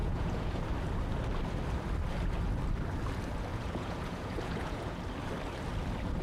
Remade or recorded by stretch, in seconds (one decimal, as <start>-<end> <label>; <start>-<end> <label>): 0.0-0.6 remade; 0.6-3.5 recorded; 3.5-5.0 remade; 5.0-6.2 recorded